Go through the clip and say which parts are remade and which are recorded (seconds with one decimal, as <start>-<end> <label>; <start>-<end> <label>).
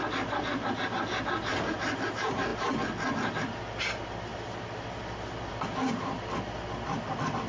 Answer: 0.0-7.5 recorded